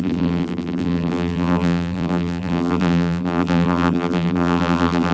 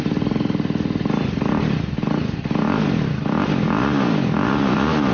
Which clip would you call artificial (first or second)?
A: first